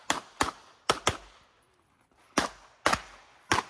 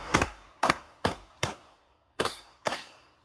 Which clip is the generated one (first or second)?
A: second